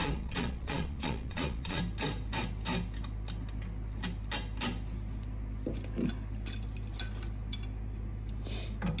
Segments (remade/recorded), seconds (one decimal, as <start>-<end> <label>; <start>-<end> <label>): 0.0-1.8 remade; 1.8-9.0 recorded